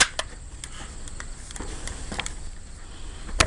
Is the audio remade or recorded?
recorded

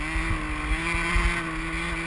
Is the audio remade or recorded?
recorded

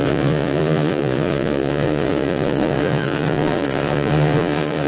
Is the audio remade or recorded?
remade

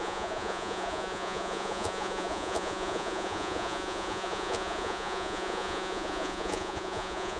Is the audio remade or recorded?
remade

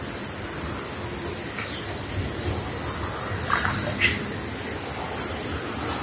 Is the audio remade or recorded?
recorded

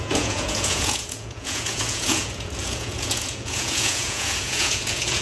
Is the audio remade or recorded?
remade